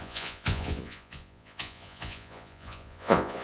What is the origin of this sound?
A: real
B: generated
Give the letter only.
B